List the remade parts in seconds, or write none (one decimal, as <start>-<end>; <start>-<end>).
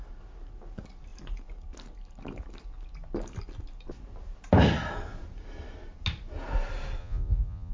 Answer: 7.0-7.7